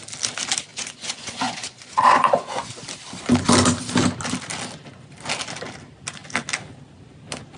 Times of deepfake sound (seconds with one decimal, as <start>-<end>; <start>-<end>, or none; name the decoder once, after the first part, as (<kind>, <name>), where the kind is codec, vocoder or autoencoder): 0.7-2.7 (vocoder, Vocos)